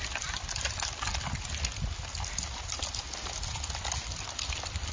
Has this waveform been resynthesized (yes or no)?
no